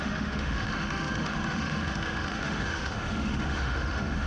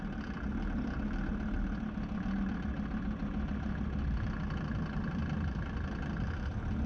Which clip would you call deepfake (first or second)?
first